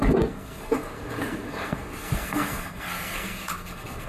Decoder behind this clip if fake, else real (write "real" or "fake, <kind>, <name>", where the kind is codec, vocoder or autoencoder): fake, codec, SNAC